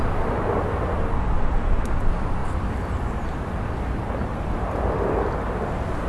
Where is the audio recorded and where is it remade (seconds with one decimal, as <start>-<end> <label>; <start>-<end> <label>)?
0.0-4.3 recorded; 4.3-4.8 remade; 4.8-6.1 recorded